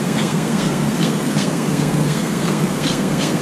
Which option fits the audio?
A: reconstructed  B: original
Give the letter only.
A